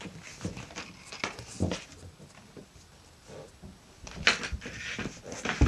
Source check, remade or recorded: recorded